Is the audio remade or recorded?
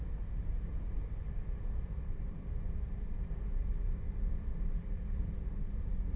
remade